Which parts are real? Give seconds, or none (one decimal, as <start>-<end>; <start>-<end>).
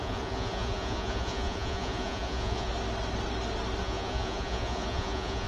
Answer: 2.7-3.8